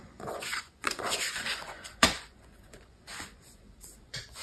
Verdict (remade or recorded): remade